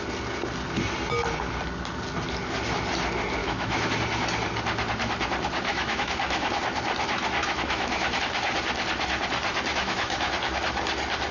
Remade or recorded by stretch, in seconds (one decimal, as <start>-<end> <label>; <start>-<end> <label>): 0.0-3.4 recorded; 3.4-3.9 remade; 3.9-5.7 recorded; 5.7-6.5 remade; 6.5-7.4 recorded; 7.4-8.2 remade; 8.2-9.7 recorded; 9.7-10.3 remade; 10.3-11.3 recorded